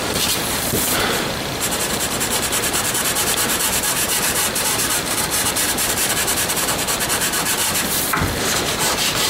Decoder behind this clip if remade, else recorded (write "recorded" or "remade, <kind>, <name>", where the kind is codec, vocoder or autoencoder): remade, vocoder, BigVGAN v2